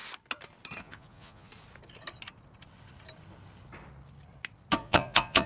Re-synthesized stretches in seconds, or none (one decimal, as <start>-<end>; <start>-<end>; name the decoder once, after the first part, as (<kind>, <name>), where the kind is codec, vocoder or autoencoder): 0.8-1.5 (vocoder, Vocos); 4.8-5.5